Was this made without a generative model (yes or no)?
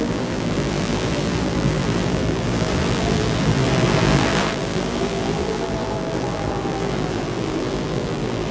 no